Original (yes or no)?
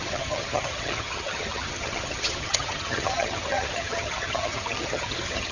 no